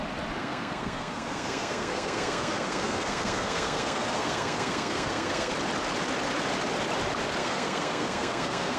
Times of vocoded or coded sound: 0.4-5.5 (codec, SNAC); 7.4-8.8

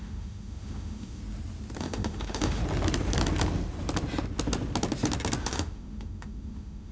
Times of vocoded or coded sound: 0.0-1.2 (autoencoder, DAC-VAE); 1.8-2.6; 5.4-6.9

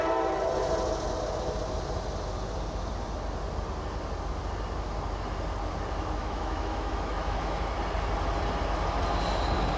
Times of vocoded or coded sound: 6.2-7.7 (autoencoder, DAC-VAE)

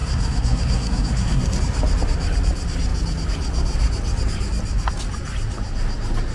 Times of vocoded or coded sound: 0.0-1.6 (codec, SNAC)